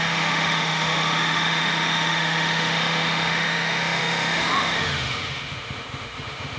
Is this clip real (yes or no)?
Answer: no